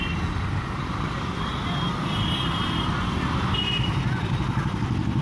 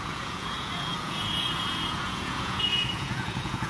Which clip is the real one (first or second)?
first